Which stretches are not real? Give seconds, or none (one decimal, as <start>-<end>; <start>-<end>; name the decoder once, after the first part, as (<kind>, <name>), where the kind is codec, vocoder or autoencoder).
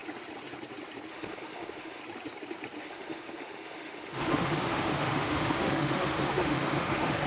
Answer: 1.1-2.0 (autoencoder, DAC-VAE); 2.8-7.3